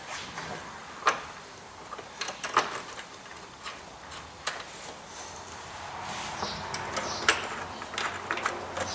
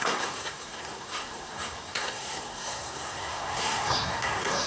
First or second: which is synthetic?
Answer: second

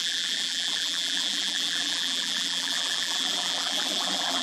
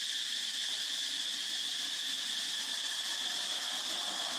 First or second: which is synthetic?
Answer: first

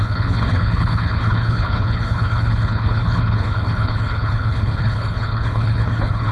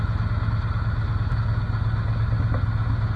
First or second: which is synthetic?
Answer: first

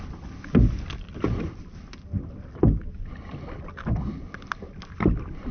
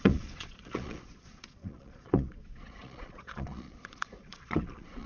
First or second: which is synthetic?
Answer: second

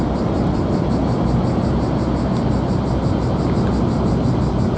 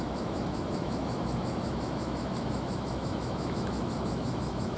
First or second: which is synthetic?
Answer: second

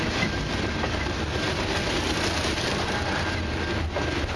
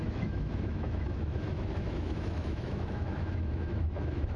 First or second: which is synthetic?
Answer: second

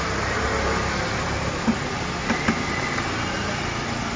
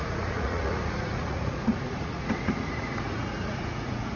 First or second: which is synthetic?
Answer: second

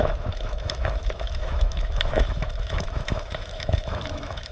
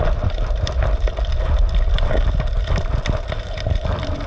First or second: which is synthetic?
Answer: first